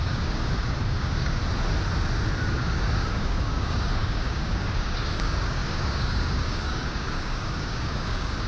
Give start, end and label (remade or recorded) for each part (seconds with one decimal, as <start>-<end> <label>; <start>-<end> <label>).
0.0-1.4 remade; 1.4-2.5 recorded; 2.5-8.5 remade